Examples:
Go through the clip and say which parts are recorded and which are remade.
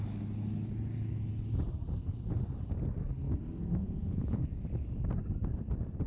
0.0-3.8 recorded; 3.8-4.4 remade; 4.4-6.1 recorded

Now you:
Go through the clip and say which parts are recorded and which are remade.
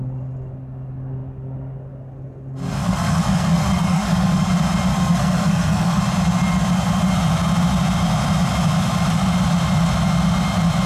0.0-2.8 recorded; 2.8-4.5 remade; 4.5-4.9 recorded; 4.9-6.0 remade; 6.0-10.9 recorded